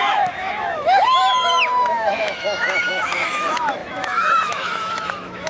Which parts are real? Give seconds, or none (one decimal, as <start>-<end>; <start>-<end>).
1.2-1.7